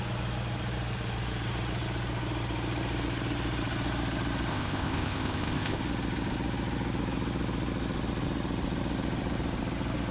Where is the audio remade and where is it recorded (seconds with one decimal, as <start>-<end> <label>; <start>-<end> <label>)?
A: 0.0-4.5 recorded; 4.5-5.8 remade; 5.8-10.1 recorded